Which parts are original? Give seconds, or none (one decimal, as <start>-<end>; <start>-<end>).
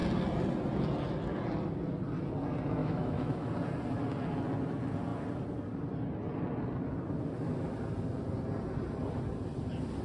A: 0.0-2.8; 3.5-10.0